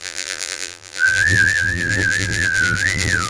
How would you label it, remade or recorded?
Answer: remade